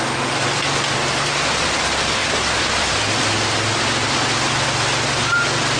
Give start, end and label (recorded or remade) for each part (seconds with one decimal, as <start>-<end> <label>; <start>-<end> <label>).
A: 0.0-5.8 recorded